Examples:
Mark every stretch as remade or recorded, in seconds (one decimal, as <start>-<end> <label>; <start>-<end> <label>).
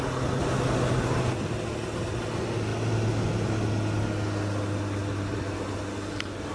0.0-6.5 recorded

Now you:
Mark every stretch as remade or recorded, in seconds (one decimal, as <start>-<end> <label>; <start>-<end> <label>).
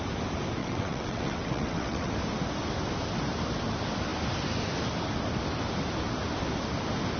0.0-0.6 recorded; 0.6-2.1 remade; 2.1-7.2 recorded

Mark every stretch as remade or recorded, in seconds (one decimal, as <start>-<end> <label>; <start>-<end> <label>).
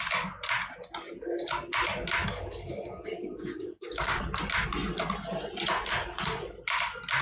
0.0-2.2 recorded; 2.2-4.2 remade; 4.2-7.2 recorded